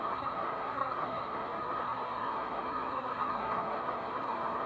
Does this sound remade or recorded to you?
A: remade